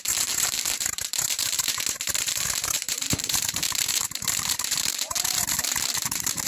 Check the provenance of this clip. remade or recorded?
remade